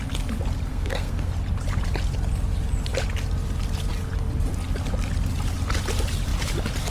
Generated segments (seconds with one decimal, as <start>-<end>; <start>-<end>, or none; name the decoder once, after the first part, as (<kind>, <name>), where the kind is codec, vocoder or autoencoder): 0.7-1.3 (codec, SNAC)